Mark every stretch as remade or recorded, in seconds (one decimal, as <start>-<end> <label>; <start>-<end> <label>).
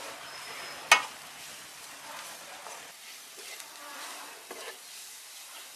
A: 0.0-1.7 recorded; 1.7-4.0 remade; 4.0-5.8 recorded